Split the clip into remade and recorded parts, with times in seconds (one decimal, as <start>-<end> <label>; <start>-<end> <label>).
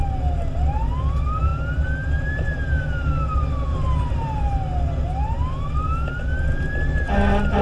0.0-3.7 recorded; 3.7-4.4 remade; 4.4-7.6 recorded